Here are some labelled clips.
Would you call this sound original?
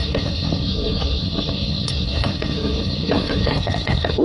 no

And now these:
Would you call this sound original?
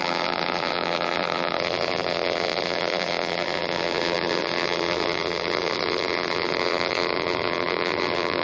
no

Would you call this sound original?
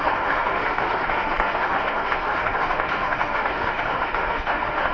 no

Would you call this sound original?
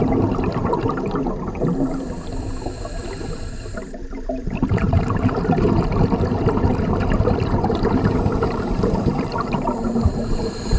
no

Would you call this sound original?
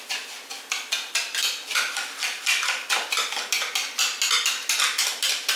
yes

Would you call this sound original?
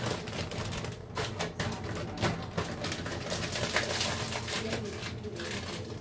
yes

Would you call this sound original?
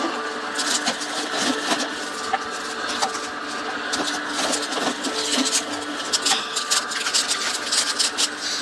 yes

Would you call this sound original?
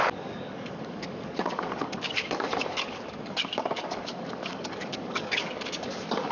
no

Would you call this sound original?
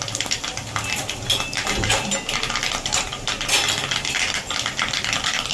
yes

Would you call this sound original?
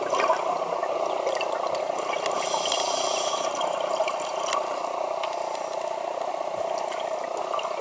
yes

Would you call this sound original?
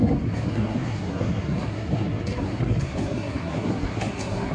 no